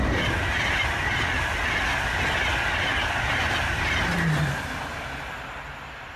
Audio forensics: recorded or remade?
recorded